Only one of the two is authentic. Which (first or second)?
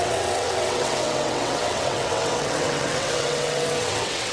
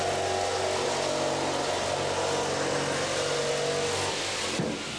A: second